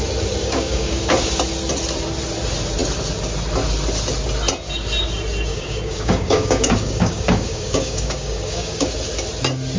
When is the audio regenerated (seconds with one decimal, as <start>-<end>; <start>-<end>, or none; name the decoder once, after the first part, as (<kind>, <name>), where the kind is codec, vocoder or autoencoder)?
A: 0.4-1.3 (codec, DAC); 5.5-8.9